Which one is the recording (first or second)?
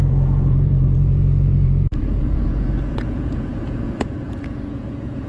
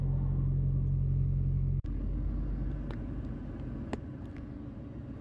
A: second